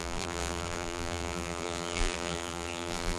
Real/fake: fake